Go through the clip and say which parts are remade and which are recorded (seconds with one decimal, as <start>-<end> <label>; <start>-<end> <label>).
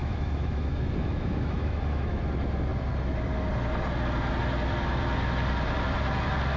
0.0-2.2 remade; 2.2-6.6 recorded